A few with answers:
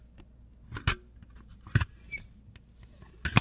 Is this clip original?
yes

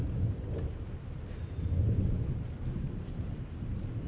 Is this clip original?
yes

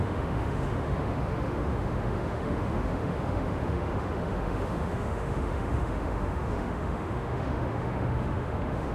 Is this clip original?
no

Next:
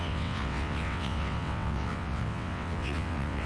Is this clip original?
no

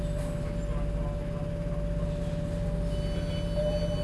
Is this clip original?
yes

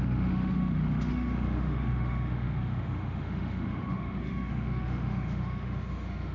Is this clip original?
no